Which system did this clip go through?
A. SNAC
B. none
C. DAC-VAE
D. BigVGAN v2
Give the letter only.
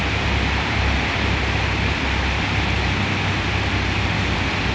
D